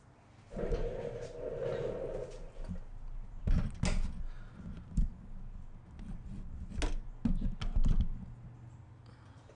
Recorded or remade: recorded